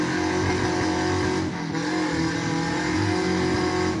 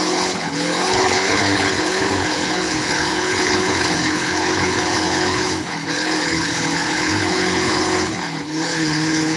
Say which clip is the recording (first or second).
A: first